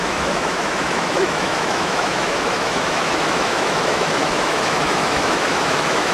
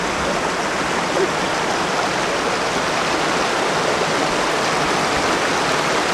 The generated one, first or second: first